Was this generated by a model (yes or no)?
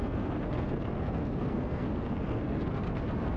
yes